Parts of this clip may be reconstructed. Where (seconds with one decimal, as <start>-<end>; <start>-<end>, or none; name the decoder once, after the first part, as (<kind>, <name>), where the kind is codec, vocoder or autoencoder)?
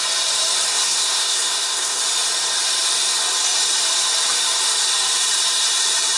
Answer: 0.7-2.0 (codec, SNAC)